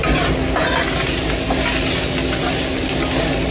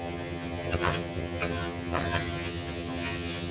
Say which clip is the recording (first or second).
first